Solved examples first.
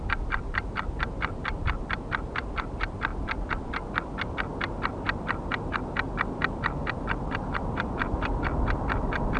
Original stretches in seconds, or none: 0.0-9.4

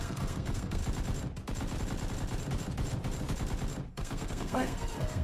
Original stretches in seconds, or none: 0.8-3.9

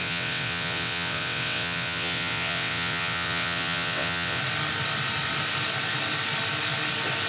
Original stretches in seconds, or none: 4.4-7.3

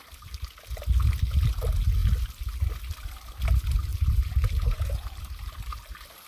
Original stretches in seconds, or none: 0.0-3.9; 5.8-6.3

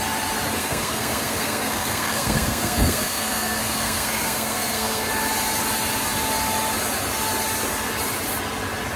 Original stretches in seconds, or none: 0.0-0.6; 5.1-9.0